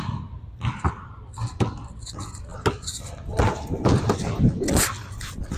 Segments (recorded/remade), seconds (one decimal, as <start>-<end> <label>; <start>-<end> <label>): 0.0-5.6 recorded